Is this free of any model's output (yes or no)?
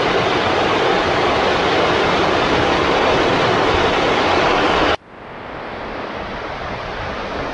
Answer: yes